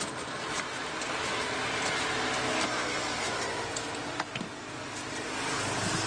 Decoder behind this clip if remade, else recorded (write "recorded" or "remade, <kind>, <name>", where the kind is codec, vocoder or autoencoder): recorded